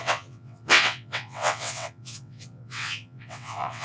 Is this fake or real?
fake